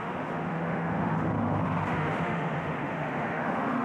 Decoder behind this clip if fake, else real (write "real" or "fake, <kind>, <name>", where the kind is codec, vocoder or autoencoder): fake, autoencoder, DAC-VAE